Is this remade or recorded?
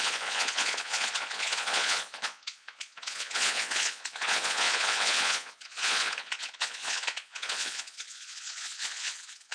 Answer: remade